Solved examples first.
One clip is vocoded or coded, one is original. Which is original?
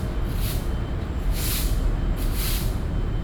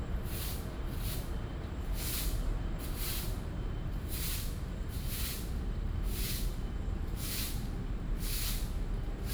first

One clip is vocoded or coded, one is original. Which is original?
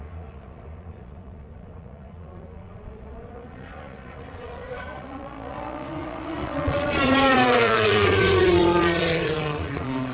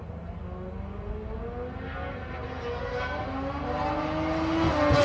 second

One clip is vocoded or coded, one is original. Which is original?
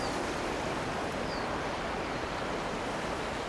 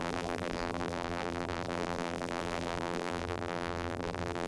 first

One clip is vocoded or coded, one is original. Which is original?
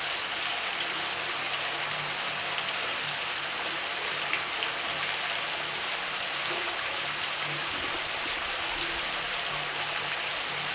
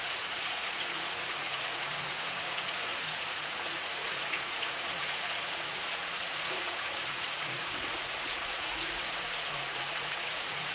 first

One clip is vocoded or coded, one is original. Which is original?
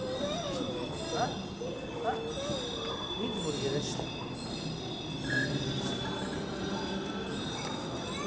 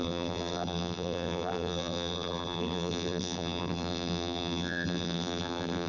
first